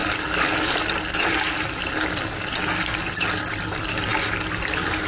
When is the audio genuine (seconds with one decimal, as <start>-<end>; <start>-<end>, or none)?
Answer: 0.0-5.1